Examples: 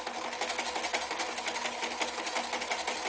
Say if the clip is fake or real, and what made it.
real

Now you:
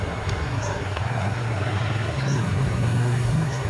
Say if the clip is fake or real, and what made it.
fake, codec, SNAC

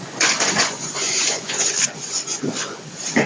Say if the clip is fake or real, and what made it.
fake, vocoder, Vocos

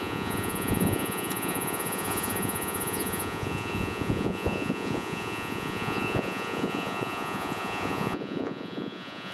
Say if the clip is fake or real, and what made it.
fake, vocoder, Vocos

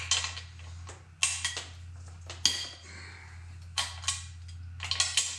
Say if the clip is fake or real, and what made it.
real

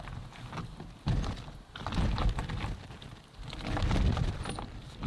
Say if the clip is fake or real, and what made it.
real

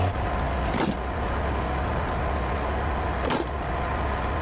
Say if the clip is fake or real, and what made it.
real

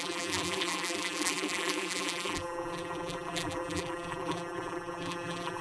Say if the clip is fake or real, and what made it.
fake, vocoder, BigVGAN v2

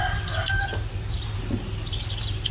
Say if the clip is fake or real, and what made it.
real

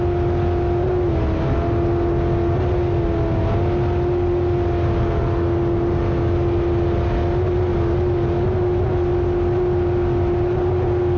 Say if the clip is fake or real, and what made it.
real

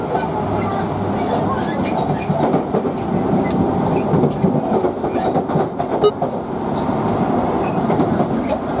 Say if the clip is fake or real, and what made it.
real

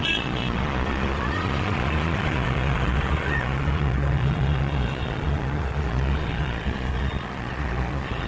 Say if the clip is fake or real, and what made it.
fake, vocoder, Vocos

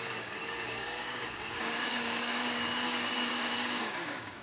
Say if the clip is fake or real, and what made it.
fake, codec, DAC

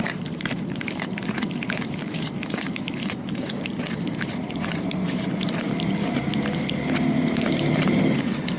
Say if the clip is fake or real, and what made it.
fake, vocoder, BigVGAN v2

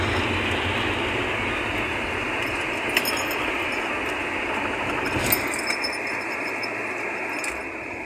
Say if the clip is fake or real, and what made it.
real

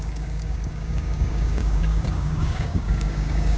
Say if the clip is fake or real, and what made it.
fake, codec, DAC